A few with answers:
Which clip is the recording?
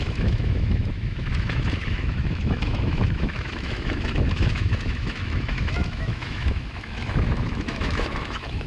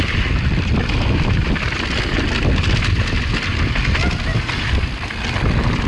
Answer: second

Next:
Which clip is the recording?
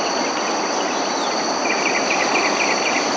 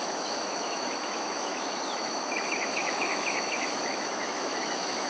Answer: first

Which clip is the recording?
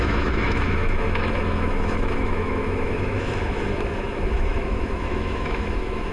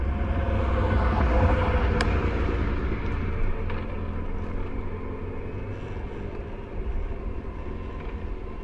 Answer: second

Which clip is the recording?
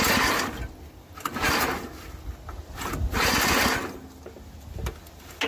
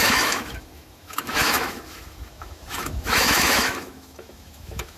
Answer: first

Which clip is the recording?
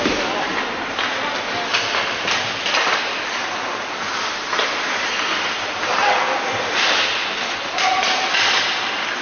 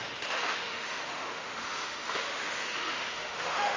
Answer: first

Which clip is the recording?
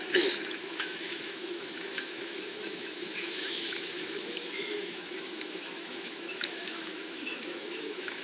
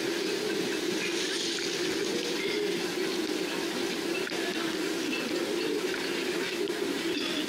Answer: second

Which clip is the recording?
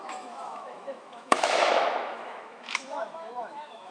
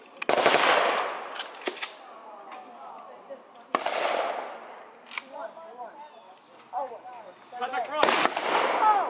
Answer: second